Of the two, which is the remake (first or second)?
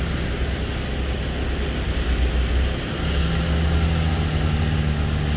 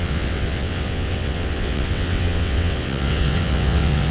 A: second